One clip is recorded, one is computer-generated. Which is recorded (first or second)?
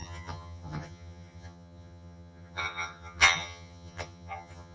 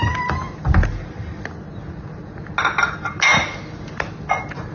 second